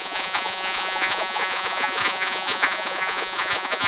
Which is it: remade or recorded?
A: remade